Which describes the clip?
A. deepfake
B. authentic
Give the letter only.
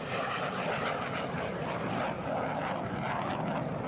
B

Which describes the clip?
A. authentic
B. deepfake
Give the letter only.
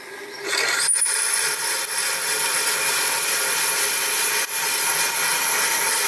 A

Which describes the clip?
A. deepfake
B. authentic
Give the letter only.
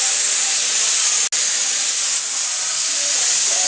B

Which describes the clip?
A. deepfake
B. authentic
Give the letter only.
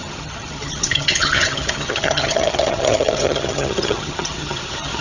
A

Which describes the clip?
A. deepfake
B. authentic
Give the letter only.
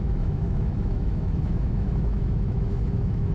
A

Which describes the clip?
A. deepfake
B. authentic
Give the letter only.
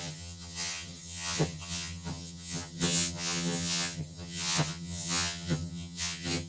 A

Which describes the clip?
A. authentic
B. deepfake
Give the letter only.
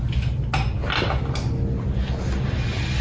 A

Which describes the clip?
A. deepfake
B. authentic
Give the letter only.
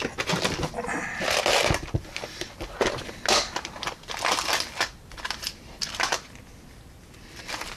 B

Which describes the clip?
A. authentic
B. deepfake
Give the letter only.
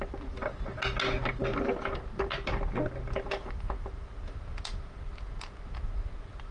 A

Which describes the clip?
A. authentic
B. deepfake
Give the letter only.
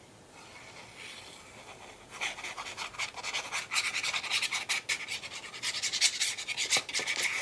A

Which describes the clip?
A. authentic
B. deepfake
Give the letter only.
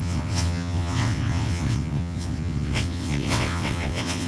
B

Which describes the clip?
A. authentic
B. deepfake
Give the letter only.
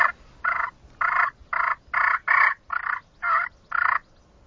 A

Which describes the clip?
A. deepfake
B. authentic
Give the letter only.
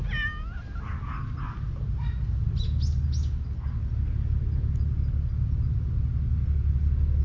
B